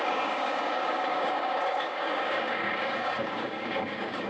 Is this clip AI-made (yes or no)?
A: yes